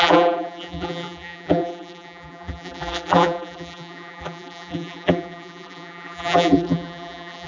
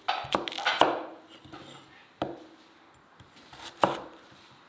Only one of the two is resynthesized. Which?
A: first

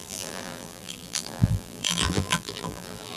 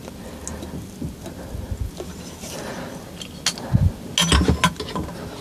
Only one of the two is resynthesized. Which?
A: first